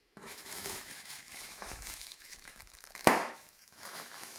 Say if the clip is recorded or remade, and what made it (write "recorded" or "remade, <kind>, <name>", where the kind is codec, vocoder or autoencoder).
remade, autoencoder, DAC-VAE